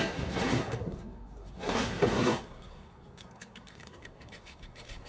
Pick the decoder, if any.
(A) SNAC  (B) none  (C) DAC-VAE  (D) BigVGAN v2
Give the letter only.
A